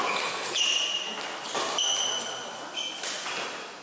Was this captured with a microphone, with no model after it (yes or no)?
yes